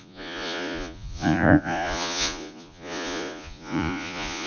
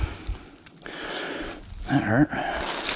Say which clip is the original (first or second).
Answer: second